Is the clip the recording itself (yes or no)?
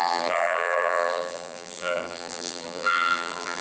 no